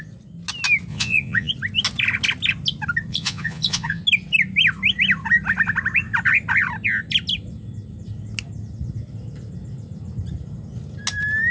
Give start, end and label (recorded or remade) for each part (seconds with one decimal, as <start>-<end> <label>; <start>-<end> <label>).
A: 0.0-0.9 recorded; 0.9-1.5 remade; 1.5-3.1 recorded; 3.1-4.0 remade; 4.0-11.5 recorded